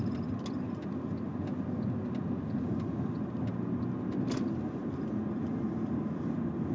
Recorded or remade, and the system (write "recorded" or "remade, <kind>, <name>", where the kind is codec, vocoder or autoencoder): recorded